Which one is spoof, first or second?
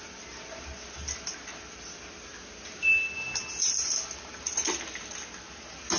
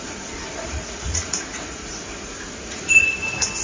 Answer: second